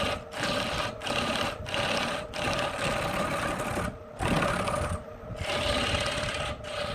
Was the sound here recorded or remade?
recorded